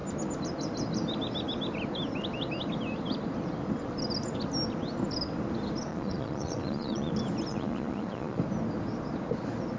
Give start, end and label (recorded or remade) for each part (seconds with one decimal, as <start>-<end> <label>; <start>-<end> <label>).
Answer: 0.0-5.9 recorded; 5.9-7.1 remade; 7.1-7.5 recorded; 7.5-8.4 remade; 8.4-9.8 recorded